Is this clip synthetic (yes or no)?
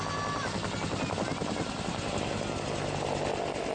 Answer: no